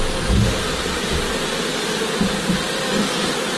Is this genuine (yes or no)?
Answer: yes